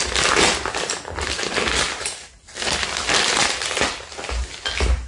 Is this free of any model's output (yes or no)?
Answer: yes